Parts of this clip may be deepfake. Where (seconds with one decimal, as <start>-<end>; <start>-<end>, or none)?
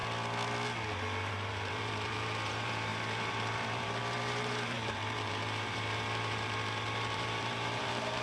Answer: 1.3-8.2